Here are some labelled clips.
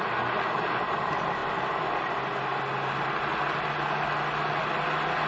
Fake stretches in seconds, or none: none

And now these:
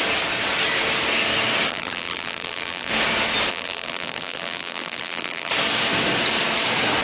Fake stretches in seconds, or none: 1.7-2.9 (vocoder, BigVGAN v2); 3.5-5.5